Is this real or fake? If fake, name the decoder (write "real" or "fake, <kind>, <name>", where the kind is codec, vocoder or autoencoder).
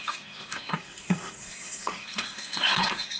fake, codec, SNAC